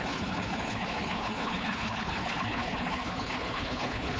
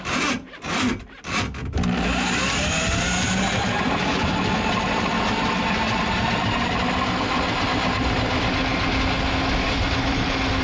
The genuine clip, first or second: second